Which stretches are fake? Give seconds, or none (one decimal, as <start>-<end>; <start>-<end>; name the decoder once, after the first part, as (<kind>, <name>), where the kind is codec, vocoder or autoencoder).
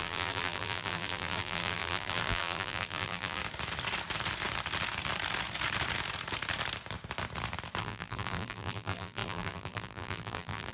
0.0-3.4 (vocoder, BigVGAN v2); 7.8-10.7